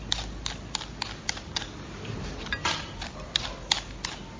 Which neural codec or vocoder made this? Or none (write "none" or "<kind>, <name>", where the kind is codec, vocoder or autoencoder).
none